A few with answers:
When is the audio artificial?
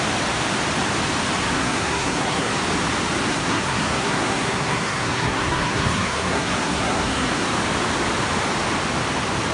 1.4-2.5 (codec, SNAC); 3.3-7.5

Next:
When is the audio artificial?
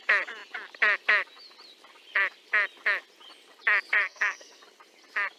4.0-4.6 (codec, SNAC)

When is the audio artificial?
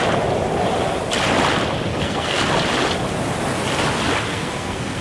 1.9-2.4 (codec, SNAC); 4.3-5.0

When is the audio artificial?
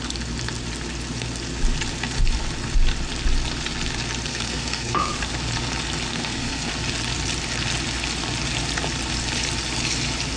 4.3-5.1 (codec, SNAC); 6.1-6.7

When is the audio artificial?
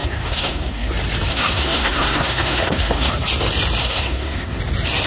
0.0-0.9 (codec, SNAC); 1.3-3.1; 3.8-4.6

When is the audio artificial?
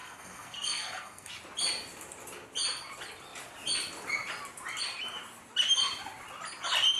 0.0-1.3 (codec, SNAC)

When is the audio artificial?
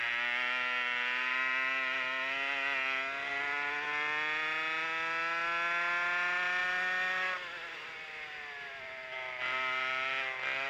none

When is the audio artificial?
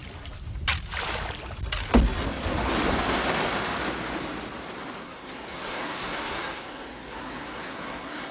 5.0-8.3 (codec, SNAC)